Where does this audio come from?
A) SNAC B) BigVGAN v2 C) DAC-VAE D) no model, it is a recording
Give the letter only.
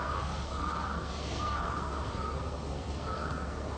A